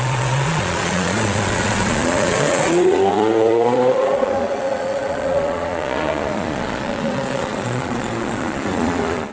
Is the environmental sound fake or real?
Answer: fake